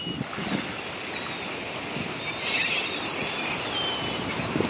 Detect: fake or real real